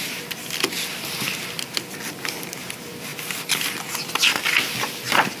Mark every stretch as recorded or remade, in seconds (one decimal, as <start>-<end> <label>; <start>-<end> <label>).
0.0-5.4 recorded